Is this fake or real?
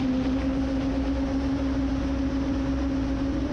real